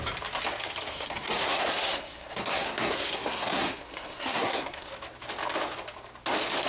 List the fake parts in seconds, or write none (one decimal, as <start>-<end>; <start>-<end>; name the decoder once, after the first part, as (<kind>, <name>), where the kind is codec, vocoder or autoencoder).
0.9-4.9 (codec, SNAC)